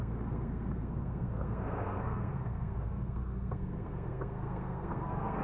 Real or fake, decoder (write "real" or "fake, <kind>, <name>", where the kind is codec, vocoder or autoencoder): fake, codec, SNAC